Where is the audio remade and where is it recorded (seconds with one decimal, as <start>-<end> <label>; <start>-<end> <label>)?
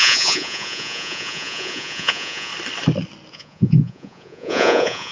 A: 0.0-2.5 remade; 2.5-3.3 recorded; 3.3-5.1 remade